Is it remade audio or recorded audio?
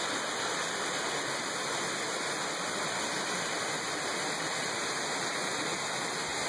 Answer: recorded